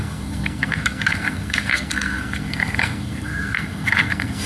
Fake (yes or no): yes